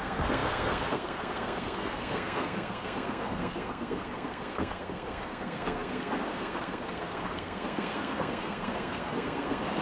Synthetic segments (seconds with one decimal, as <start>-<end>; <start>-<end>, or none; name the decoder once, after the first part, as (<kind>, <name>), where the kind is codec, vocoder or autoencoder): 0.0-9.8 (codec, SNAC)